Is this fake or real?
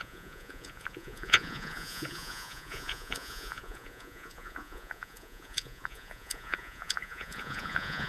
fake